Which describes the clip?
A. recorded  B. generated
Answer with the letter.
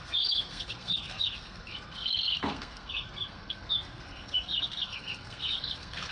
B